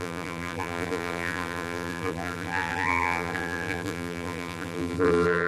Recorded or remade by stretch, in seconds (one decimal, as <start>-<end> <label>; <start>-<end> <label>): 0.0-5.5 remade

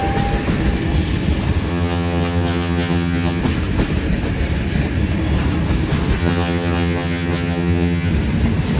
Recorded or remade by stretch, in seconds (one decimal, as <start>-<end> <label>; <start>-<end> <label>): 0.0-1.7 recorded; 1.7-3.4 remade; 3.4-6.2 recorded; 6.2-8.1 remade; 8.1-8.8 recorded